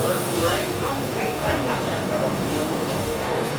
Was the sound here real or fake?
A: fake